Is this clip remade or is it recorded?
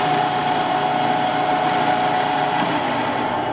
recorded